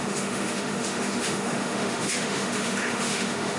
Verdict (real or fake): fake